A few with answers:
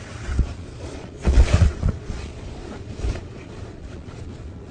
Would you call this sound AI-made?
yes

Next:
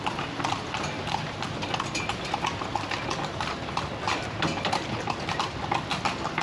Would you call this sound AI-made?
no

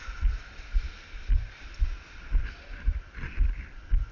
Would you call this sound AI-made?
no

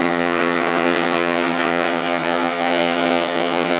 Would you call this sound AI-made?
yes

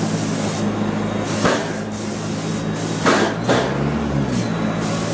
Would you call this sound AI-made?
no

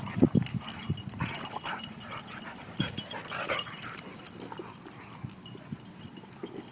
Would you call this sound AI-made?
no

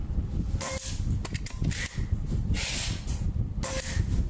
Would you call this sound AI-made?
no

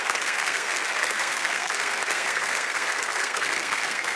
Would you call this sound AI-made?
yes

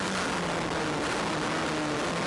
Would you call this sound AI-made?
no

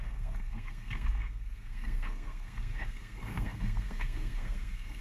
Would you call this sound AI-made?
yes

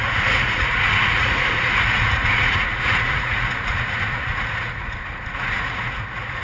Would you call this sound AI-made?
yes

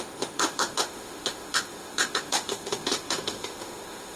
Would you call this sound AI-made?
yes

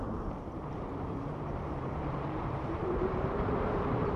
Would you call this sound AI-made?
yes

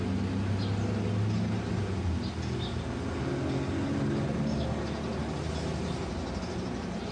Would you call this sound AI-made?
no